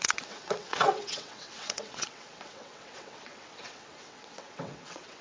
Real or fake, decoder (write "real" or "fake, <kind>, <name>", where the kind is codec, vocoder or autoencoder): fake, vocoder, WaveNeXt